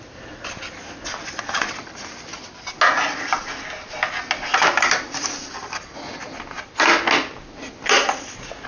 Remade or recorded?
recorded